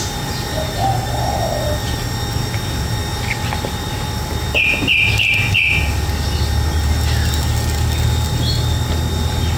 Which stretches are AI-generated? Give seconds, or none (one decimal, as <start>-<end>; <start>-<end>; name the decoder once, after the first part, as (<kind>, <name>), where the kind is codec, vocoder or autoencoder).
none